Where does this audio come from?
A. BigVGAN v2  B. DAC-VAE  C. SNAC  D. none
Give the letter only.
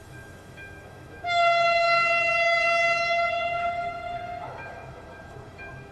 B